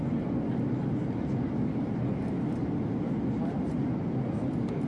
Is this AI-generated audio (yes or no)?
no